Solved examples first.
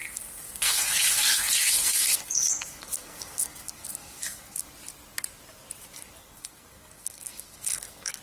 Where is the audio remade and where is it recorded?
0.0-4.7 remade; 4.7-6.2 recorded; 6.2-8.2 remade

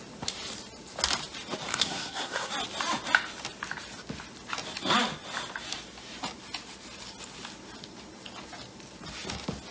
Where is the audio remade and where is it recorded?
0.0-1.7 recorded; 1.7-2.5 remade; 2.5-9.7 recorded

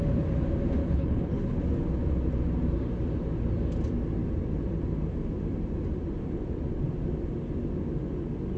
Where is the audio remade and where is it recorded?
0.0-0.8 recorded; 0.8-1.6 remade; 1.6-8.6 recorded

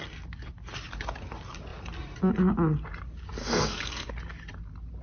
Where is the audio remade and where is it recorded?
0.0-3.4 recorded; 3.4-4.1 remade; 4.1-5.0 recorded

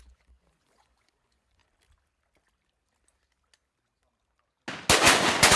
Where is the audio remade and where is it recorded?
0.0-1.6 remade; 1.6-5.0 recorded; 5.0-5.6 remade